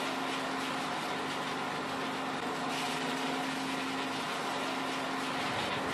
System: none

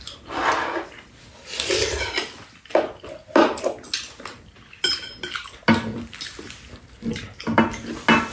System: none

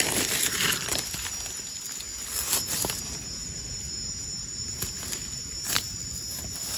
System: none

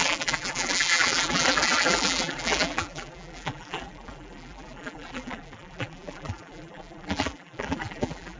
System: vocoder, BigVGAN v2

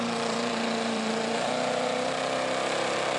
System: vocoder, BigVGAN v2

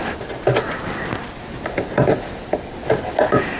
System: none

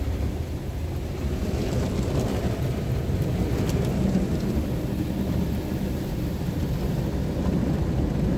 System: none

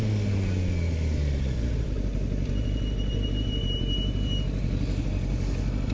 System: none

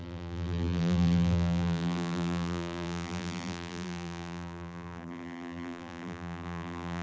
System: vocoder, BigVGAN v2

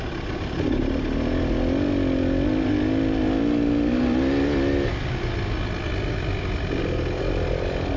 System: none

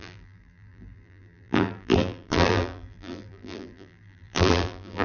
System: vocoder, BigVGAN v2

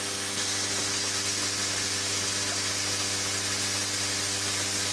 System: none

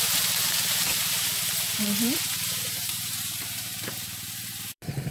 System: vocoder, BigVGAN v2